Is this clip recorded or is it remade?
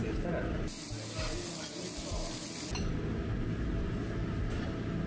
recorded